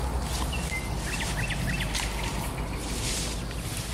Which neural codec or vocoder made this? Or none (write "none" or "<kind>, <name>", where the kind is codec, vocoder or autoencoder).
none